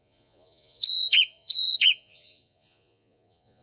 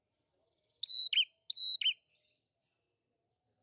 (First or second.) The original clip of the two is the second